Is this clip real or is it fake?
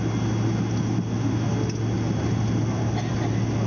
real